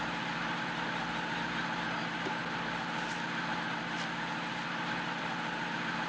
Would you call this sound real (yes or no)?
yes